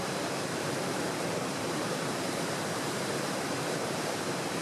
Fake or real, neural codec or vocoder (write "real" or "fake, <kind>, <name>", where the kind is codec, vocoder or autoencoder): fake, vocoder, BigVGAN v2